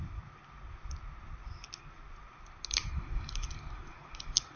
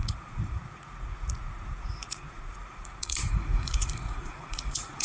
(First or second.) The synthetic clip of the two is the second